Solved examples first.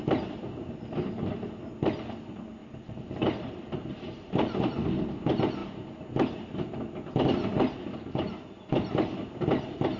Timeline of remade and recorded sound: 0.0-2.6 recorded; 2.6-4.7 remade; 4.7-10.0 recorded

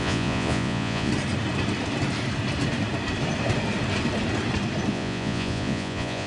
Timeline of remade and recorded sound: 0.0-1.1 remade; 1.1-4.9 recorded; 4.9-6.3 remade

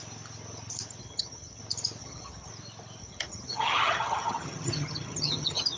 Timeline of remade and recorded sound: 0.0-1.0 recorded; 1.0-1.6 remade; 1.6-2.0 recorded; 2.0-2.5 remade; 2.5-3.0 recorded; 3.0-5.8 remade

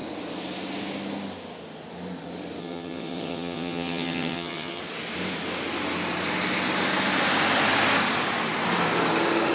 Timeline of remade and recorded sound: 0.0-2.6 recorded; 2.6-4.8 remade; 4.8-9.5 recorded